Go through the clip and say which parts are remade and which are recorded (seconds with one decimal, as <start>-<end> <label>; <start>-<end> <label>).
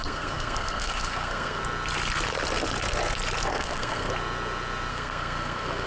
0.0-1.6 remade; 1.6-3.5 recorded; 3.5-4.1 remade; 4.1-4.9 recorded; 4.9-5.9 remade